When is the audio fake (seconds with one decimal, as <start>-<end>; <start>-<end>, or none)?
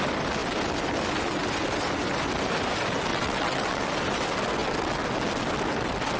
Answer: 3.1-3.8